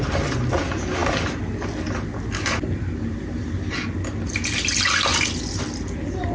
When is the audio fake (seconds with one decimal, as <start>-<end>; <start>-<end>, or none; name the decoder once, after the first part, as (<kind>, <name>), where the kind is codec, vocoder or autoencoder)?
none